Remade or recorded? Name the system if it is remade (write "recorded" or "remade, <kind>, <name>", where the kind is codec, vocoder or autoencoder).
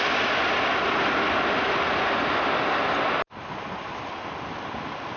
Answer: recorded